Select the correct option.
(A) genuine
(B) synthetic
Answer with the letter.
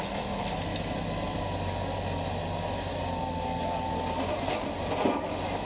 A